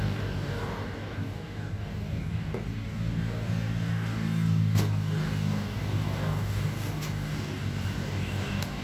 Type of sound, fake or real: fake